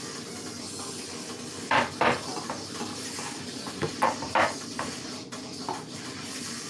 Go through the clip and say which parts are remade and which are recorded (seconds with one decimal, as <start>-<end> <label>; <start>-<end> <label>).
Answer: 0.0-2.3 recorded; 2.3-5.1 remade; 5.1-6.7 recorded